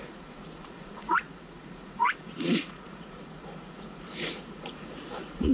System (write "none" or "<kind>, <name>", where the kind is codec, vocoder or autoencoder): vocoder, Vocos